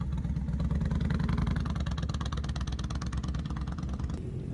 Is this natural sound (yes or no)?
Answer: yes